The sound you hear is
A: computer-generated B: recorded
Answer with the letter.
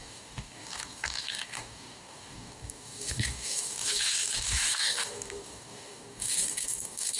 A